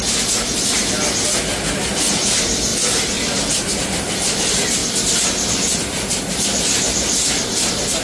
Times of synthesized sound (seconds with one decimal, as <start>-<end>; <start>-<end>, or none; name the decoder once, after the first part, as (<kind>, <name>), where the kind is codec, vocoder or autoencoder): none